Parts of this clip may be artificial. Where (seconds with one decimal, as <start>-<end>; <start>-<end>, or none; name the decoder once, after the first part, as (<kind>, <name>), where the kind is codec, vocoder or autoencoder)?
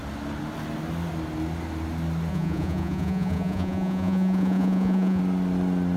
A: 2.3-5.2 (vocoder, Vocos)